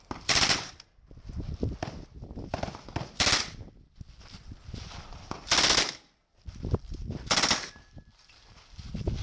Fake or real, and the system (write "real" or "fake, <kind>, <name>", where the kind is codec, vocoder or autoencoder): real